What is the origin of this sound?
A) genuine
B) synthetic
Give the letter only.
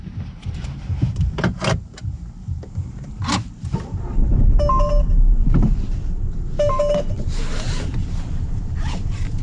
B